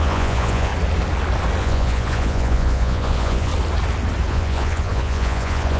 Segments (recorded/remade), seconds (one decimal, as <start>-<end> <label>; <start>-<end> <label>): 0.0-0.7 remade; 0.7-1.6 recorded; 1.6-3.5 remade; 3.5-4.3 recorded; 4.3-5.8 remade